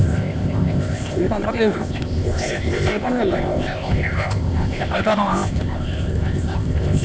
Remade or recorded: remade